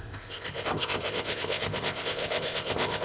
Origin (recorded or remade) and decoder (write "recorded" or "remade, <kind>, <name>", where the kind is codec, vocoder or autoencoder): remade, codec, ZipCodec